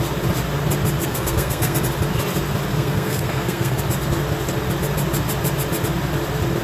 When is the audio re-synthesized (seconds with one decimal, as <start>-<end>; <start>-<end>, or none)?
1.0-1.8; 2.7-3.8